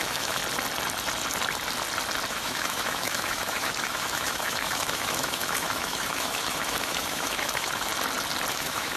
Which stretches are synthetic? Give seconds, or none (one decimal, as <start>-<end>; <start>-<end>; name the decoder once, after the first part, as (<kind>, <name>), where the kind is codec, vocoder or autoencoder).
0.0-0.4 (autoencoder, DAC-VAE); 2.3-7.9; 8.5-9.0